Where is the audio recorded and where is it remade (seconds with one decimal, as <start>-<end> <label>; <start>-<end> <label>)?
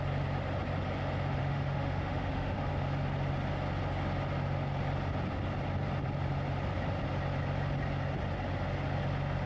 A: 0.0-1.4 recorded; 1.4-2.7 remade; 2.7-9.5 recorded